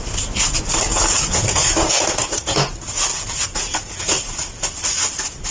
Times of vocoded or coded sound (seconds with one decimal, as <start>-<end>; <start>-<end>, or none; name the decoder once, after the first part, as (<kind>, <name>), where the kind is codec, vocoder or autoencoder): 0.9-4.2 (vocoder, Vocos)